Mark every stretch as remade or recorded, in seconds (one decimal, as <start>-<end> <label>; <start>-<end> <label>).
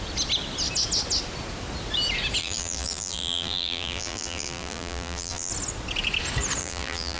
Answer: 0.0-2.4 recorded; 2.4-5.5 remade; 5.5-6.6 recorded; 6.6-7.2 remade